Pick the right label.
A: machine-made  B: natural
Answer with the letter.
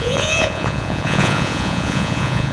A